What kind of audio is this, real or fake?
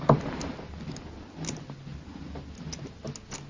real